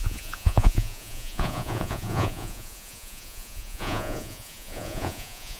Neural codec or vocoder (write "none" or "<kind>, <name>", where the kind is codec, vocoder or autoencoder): vocoder, Vocos